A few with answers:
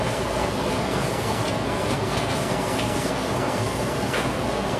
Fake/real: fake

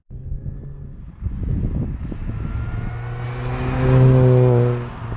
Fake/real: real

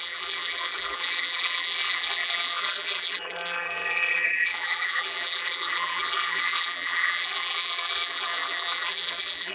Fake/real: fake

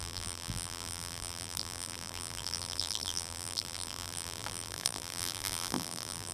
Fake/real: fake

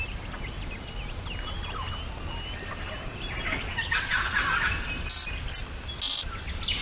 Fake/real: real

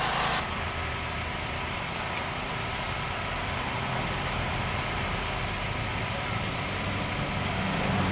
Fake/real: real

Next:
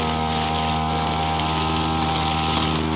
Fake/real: real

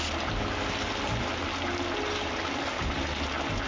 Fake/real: real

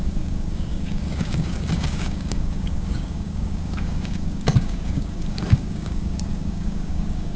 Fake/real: fake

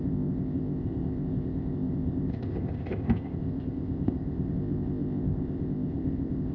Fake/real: fake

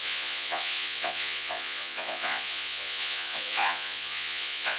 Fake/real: fake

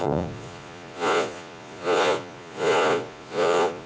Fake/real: fake